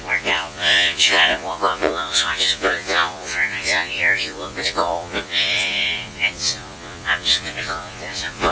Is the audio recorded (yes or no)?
no